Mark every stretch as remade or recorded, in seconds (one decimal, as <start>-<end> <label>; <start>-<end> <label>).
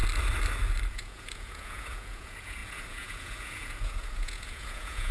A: 0.0-0.9 recorded; 0.9-5.1 remade